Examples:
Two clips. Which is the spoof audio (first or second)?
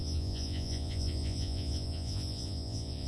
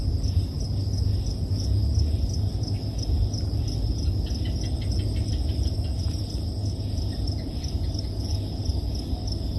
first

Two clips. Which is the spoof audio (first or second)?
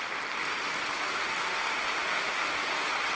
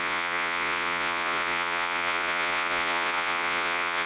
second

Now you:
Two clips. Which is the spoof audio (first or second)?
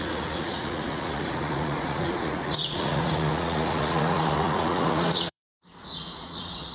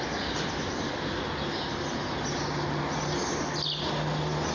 first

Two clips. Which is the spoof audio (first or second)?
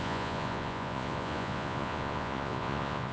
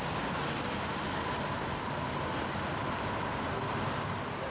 first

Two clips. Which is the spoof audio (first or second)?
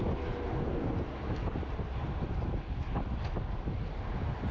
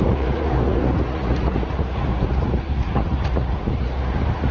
second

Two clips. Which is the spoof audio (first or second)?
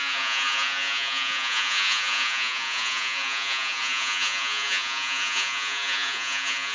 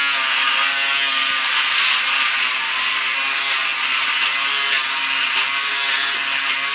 first